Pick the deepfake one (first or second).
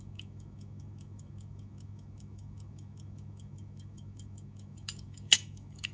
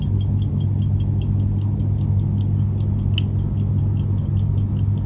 first